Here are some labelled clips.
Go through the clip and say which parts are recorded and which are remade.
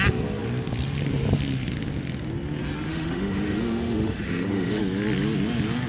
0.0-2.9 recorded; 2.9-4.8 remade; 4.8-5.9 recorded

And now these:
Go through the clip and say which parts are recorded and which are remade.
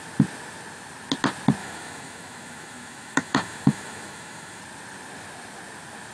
0.0-1.6 recorded; 1.6-4.6 remade; 4.6-6.1 recorded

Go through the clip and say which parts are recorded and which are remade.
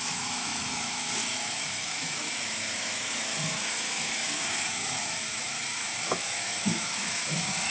0.0-7.7 remade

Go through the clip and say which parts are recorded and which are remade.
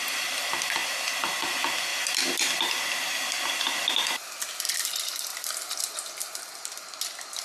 0.0-7.4 recorded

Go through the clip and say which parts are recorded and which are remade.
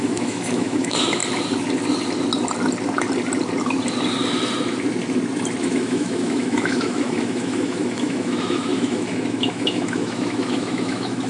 0.0-1.2 remade; 1.2-5.6 recorded; 5.6-11.3 remade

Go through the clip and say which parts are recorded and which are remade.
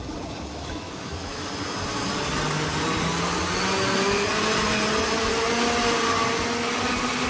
0.0-0.5 recorded; 0.5-1.5 remade; 1.5-7.3 recorded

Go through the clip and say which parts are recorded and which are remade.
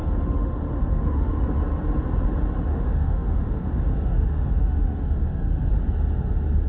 0.0-1.3 remade; 1.3-2.7 recorded; 2.7-5.7 remade; 5.7-6.7 recorded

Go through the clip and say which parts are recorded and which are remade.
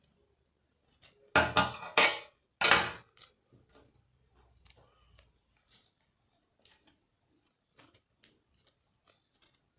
0.0-9.8 recorded